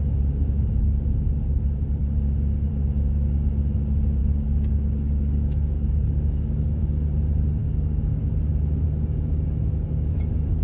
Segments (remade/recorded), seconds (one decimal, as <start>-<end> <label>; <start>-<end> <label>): 0.0-4.2 recorded; 4.2-6.8 remade; 6.8-7.6 recorded; 7.6-8.3 remade; 8.3-10.6 recorded